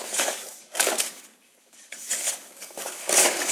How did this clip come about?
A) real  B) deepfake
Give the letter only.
B